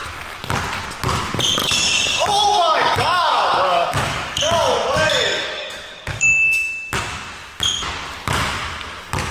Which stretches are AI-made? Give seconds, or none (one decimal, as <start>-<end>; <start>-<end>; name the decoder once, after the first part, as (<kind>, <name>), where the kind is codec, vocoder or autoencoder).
1.6-6.7 (codec, DAC)